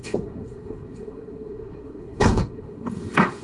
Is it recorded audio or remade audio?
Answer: remade